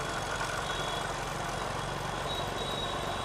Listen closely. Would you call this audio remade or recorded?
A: recorded